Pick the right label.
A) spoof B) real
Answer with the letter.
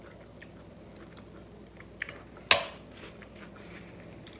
B